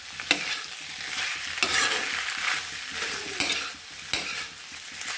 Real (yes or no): yes